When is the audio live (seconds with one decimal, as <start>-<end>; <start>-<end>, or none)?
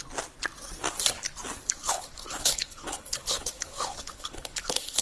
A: 0.0-1.8